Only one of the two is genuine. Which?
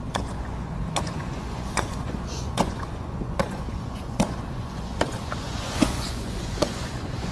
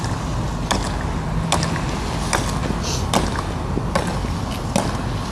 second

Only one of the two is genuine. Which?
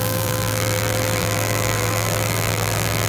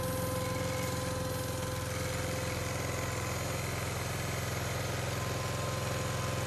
second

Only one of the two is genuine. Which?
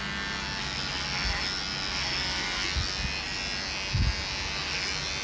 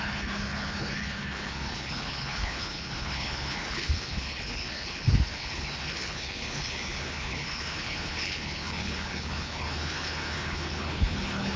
first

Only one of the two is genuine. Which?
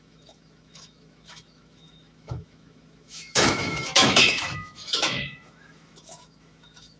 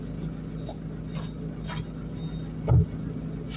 second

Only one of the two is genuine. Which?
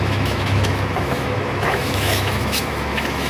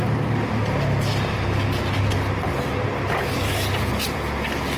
second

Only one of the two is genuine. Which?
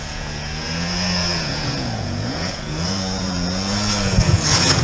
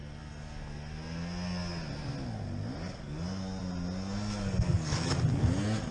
second